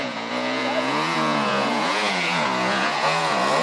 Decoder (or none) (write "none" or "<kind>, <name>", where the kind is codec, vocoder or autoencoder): vocoder, Vocos